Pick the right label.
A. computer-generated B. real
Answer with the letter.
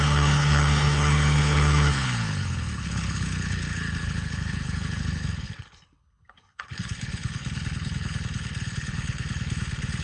A